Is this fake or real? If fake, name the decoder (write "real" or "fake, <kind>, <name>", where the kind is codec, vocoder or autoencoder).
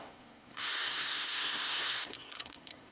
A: fake, codec, SNAC